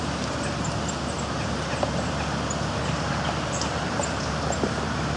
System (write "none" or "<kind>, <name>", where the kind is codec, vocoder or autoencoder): none